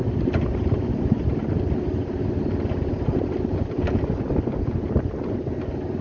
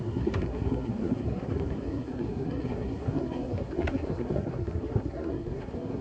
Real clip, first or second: first